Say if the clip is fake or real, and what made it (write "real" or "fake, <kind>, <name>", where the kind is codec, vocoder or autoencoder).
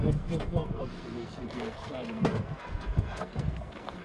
fake, codec, SNAC